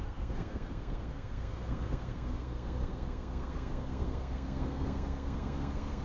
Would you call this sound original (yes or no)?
no